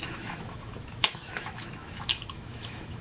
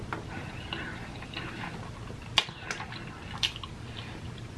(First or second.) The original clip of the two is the second